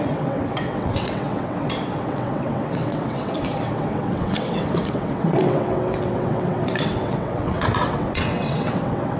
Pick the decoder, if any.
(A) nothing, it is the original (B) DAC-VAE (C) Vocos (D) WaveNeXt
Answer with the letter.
D